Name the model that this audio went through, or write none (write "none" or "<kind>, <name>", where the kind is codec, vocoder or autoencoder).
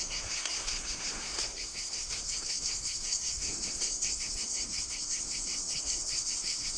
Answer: codec, SNAC